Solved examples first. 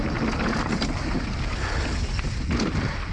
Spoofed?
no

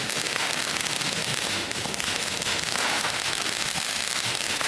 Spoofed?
yes